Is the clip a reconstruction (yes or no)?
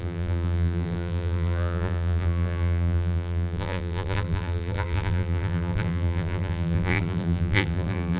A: yes